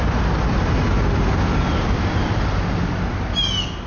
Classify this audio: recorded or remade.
recorded